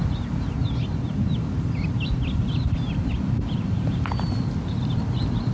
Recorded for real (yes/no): yes